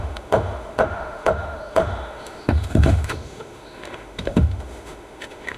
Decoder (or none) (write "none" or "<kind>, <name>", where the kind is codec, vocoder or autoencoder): autoencoder, DAC-VAE